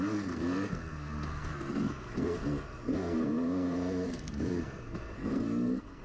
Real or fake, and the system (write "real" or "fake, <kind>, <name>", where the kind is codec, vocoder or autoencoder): fake, codec, SNAC